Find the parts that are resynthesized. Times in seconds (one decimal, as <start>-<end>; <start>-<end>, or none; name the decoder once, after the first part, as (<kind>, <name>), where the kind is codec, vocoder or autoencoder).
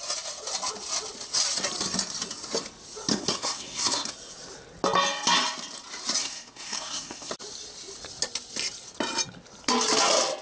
3.1-4.1 (codec, SNAC); 6.2-7.3